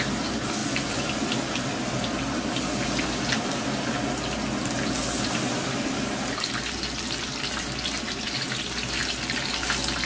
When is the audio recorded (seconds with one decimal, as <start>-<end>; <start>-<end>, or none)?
0.0-10.1